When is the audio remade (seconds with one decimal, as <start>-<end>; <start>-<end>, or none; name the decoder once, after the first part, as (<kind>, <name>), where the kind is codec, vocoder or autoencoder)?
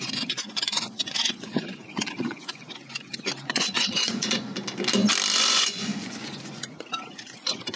0.0-4.5 (vocoder, Vocos); 5.4-7.8